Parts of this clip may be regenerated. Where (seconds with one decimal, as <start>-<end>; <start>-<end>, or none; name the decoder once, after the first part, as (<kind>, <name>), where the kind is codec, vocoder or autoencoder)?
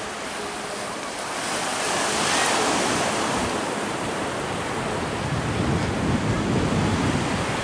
none